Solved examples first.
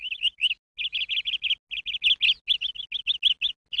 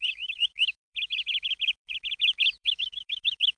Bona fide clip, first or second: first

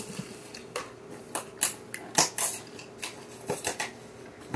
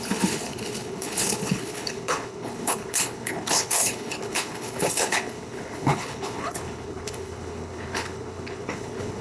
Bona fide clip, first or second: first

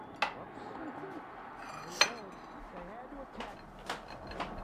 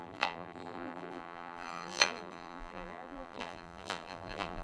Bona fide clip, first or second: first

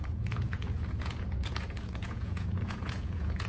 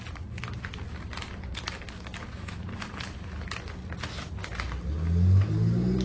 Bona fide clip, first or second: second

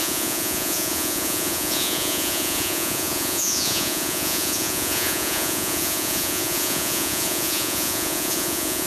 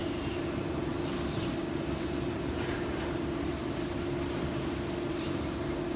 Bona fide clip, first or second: second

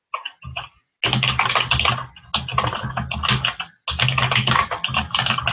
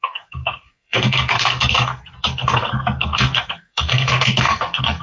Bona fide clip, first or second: first